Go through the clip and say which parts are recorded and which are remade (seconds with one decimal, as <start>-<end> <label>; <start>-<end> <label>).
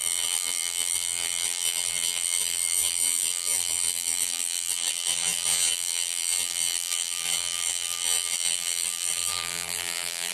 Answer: 0.0-10.3 remade